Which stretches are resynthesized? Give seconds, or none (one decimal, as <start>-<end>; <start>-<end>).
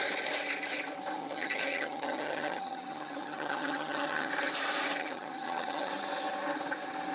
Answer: 1.2-4.3; 5.0-5.9